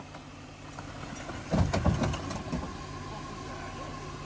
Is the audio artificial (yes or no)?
no